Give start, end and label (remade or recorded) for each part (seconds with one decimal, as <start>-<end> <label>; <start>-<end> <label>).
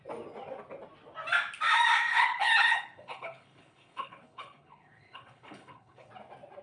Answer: 0.0-2.1 recorded; 2.1-6.1 remade; 6.1-6.6 recorded